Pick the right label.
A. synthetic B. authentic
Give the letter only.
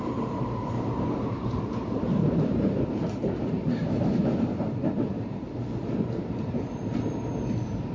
A